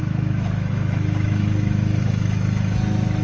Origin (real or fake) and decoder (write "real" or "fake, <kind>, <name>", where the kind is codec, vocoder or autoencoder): fake, autoencoder, DAC-VAE